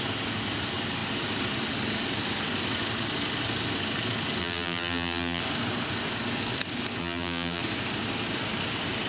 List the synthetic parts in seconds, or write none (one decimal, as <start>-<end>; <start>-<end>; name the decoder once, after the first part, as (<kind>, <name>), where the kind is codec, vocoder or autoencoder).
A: 4.4-5.4 (vocoder, BigVGAN v2); 7.0-7.6